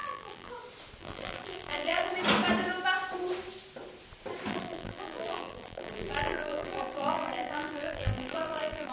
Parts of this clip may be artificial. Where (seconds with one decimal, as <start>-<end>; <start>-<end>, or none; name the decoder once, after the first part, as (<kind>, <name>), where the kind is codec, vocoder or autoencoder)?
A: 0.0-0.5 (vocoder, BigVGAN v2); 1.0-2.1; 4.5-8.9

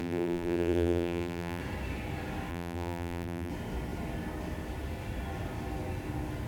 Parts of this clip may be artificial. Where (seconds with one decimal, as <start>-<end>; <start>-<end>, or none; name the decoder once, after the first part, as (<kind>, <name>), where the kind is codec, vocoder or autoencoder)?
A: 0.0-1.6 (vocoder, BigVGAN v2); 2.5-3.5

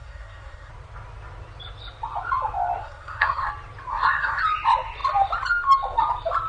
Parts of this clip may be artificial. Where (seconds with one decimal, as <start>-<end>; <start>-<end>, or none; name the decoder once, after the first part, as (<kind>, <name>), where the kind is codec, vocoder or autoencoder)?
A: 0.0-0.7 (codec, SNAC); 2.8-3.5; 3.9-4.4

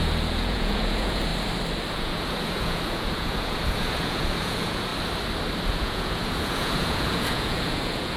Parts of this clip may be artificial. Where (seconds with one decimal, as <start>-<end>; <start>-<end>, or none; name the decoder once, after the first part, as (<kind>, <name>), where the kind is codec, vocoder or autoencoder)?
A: 0.0-1.3 (vocoder, Vocos); 1.9-4.9; 5.7-8.2